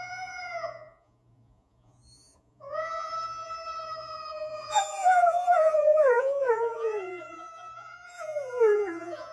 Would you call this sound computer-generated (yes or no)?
yes